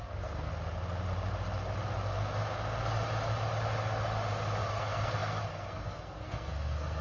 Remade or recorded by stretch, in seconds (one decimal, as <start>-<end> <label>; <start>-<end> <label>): 0.0-0.5 remade; 0.5-4.7 recorded; 4.7-7.0 remade